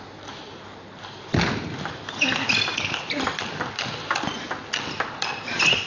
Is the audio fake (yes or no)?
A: no